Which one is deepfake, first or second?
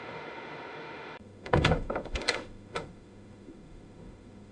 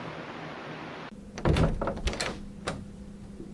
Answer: first